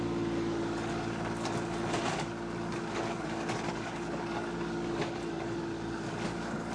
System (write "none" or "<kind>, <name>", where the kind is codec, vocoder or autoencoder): codec, DAC